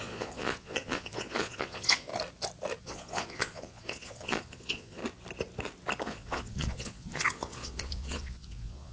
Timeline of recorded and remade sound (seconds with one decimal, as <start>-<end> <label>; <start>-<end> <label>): 0.0-2.1 remade; 2.1-2.8 recorded; 2.8-5.0 remade; 5.0-6.0 recorded; 6.0-8.9 remade